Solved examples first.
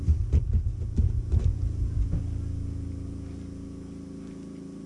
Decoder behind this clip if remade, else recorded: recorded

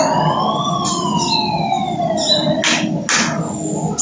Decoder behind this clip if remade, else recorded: recorded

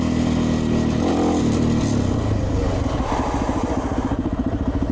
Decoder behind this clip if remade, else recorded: recorded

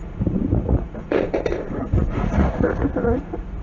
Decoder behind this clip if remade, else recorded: remade, vocoder, Vocos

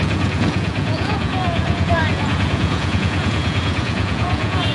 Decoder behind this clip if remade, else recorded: remade, vocoder, Vocos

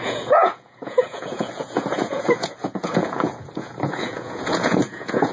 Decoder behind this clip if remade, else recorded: remade, vocoder, Vocos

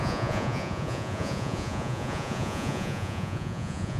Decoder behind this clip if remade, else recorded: remade, vocoder, Vocos